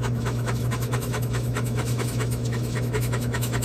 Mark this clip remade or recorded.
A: remade